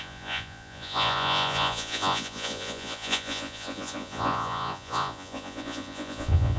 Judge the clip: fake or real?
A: fake